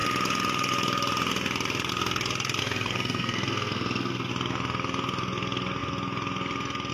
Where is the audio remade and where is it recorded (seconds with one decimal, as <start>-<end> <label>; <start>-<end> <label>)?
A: 0.0-2.6 recorded; 2.6-4.3 remade; 4.3-6.9 recorded

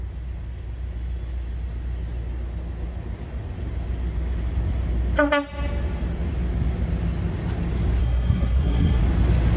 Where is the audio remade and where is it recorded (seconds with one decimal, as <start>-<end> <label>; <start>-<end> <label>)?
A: 0.0-8.0 recorded; 8.0-9.0 remade; 9.0-9.6 recorded

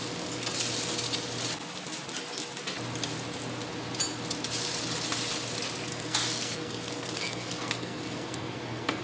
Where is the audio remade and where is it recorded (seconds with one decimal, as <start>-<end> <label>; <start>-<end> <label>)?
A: 0.0-5.9 recorded; 5.9-9.0 remade

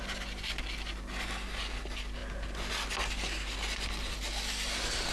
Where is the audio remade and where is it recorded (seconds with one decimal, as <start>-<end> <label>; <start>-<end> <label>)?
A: 0.0-5.1 recorded

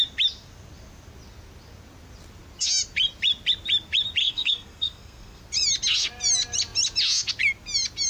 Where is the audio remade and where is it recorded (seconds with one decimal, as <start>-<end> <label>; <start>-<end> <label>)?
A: 0.0-4.2 recorded; 4.2-5.4 remade; 5.4-8.1 recorded

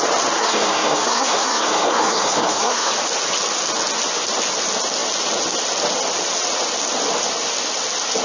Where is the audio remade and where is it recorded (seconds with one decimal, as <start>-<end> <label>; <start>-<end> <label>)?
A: 0.0-0.4 recorded; 0.4-2.9 remade; 2.9-8.2 recorded

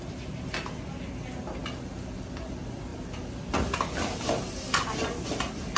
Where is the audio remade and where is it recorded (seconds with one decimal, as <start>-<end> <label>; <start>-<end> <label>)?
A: 0.0-5.8 recorded